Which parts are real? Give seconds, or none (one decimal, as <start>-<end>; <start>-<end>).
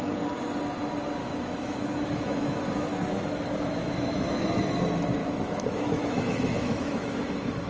0.0-1.2; 4.8-5.2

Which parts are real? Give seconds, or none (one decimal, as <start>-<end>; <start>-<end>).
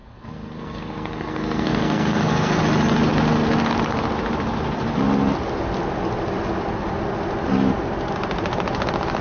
2.6-9.2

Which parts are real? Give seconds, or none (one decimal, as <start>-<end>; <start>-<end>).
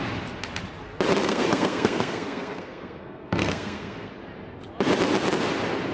0.0-1.2; 4.1-5.9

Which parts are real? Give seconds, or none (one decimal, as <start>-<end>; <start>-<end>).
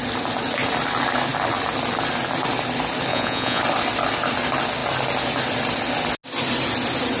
0.0-3.1; 3.6-7.2